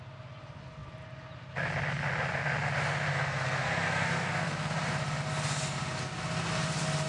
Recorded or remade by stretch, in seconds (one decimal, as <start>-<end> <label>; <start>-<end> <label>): 0.0-3.1 recorded; 3.1-4.7 remade; 4.7-7.1 recorded